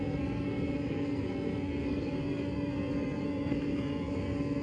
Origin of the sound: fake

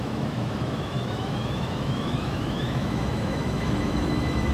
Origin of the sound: fake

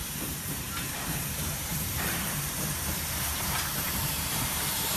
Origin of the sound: fake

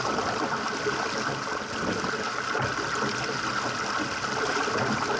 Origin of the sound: real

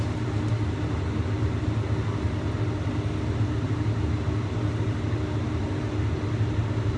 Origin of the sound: real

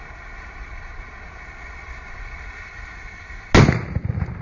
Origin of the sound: real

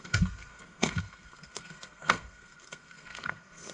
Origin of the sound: fake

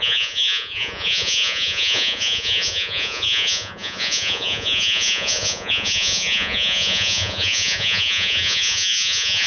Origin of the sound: fake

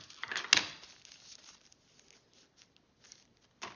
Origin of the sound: real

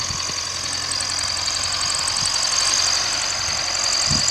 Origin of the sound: real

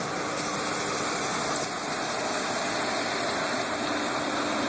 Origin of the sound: real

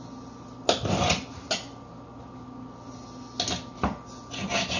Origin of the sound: real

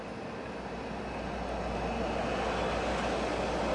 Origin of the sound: real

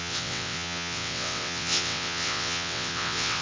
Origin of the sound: fake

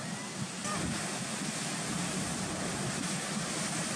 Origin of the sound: real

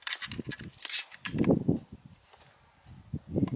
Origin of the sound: real